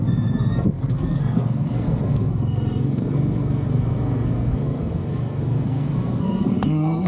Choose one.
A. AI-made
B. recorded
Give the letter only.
A